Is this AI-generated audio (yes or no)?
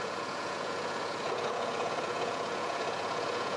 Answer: yes